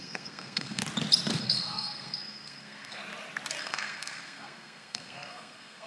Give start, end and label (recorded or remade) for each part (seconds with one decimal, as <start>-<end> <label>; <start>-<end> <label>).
0.0-0.8 remade; 0.8-1.4 recorded; 1.4-3.0 remade; 3.0-3.6 recorded; 3.6-5.9 remade